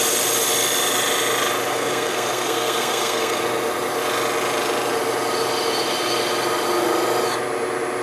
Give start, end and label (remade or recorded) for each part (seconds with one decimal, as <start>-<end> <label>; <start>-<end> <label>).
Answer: 0.0-1.7 recorded; 1.7-3.4 remade; 3.4-8.0 recorded